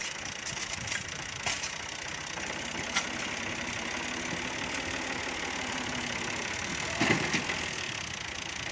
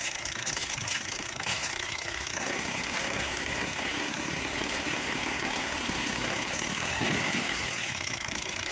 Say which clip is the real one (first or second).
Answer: first